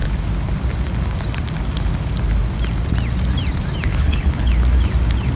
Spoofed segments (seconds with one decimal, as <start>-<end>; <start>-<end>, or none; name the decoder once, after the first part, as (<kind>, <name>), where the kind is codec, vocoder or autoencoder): 3.9-4.5 (codec, HILCodec)